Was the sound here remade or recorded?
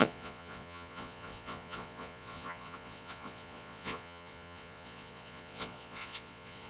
remade